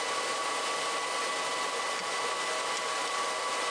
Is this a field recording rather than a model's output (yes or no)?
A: yes